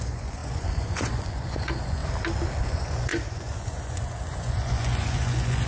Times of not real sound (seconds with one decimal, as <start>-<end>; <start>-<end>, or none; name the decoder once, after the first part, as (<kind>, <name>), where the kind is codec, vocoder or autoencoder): 0.0-2.0 (vocoder, Vocos); 2.6-5.7